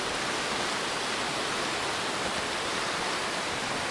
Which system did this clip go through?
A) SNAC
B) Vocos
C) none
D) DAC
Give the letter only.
C